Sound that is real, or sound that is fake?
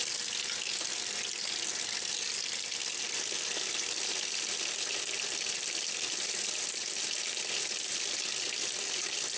real